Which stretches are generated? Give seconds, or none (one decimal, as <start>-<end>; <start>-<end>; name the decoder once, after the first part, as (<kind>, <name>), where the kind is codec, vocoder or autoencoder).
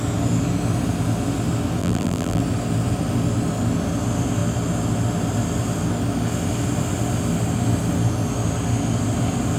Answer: 1.8-2.4 (vocoder, BigVGAN v2)